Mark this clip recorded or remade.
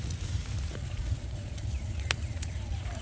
remade